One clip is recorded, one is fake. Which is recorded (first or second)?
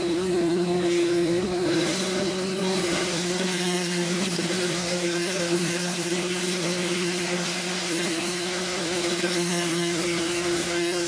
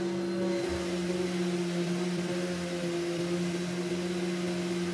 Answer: second